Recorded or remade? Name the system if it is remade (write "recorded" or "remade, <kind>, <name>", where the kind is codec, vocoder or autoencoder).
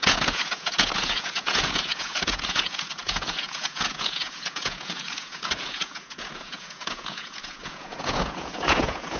remade, vocoder, Vocos